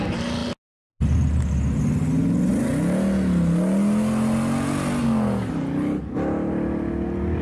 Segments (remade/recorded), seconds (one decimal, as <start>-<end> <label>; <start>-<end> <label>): 0.0-7.4 recorded